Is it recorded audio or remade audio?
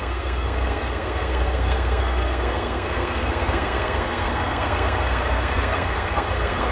remade